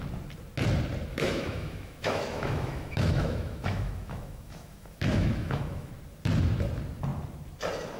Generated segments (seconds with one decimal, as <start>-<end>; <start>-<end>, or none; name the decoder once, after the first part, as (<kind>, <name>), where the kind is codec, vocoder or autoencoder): 1.1-5.9 (autoencoder, DAC-VAE)